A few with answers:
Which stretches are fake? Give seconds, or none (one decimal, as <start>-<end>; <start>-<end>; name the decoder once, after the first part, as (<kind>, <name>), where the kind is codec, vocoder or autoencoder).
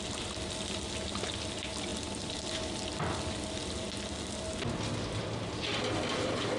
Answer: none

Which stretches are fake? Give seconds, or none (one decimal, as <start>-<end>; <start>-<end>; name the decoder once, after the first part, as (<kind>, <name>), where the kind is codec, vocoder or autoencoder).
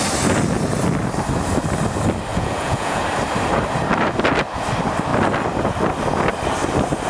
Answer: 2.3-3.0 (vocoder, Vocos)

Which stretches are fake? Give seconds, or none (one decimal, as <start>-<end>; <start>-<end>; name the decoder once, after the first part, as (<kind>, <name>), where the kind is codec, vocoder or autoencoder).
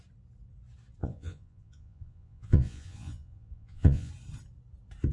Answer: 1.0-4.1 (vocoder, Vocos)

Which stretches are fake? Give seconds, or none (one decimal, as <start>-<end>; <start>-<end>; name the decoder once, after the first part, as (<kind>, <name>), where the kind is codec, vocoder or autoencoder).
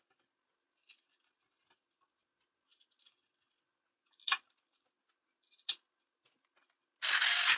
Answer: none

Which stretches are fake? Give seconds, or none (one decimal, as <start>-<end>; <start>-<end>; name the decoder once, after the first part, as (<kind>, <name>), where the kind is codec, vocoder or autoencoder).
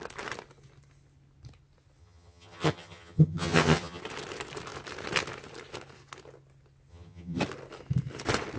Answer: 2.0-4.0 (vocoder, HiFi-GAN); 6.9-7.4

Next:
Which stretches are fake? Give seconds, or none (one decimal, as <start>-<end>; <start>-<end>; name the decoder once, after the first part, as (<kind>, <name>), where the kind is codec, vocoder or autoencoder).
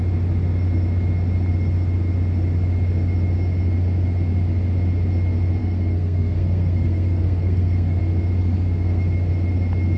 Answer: 5.6-8.0 (codec, SNAC); 8.4-9.0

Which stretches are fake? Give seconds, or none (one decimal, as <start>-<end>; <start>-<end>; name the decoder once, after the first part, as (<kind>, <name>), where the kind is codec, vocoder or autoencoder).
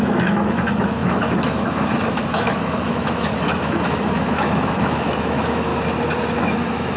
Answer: 0.0-5.7 (autoencoder, DAC-VAE); 6.3-7.0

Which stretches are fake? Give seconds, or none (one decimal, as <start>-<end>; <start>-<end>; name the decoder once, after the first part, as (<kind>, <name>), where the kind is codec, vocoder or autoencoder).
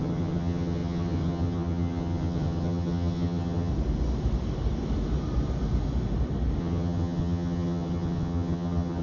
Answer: 0.0-3.7 (vocoder, HiFi-GAN); 6.6-9.0